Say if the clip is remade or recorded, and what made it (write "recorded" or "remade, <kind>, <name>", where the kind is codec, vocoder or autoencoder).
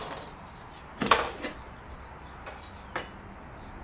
recorded